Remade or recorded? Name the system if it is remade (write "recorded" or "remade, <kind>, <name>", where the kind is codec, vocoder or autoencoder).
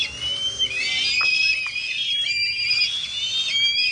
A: recorded